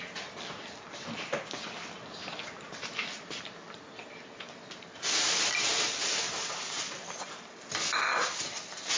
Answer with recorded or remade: recorded